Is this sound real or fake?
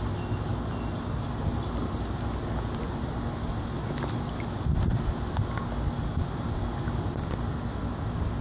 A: real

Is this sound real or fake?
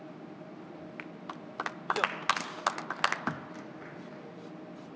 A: real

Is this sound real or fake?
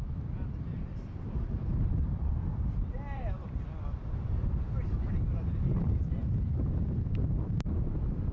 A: fake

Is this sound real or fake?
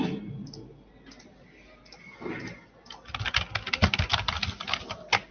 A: real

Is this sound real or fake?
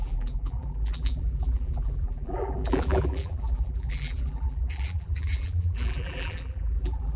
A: fake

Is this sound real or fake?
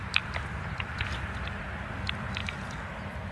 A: real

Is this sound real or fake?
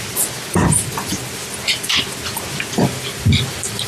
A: real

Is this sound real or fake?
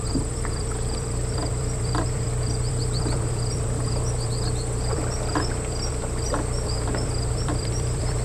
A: fake